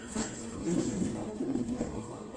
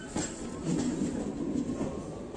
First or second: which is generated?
first